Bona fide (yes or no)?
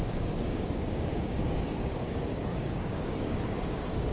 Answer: no